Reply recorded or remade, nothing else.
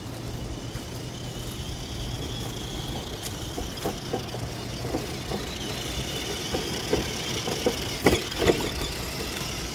recorded